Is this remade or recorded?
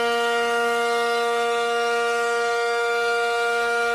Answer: remade